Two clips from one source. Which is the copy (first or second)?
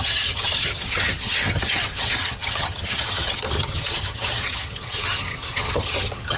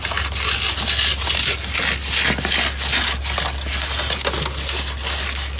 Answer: first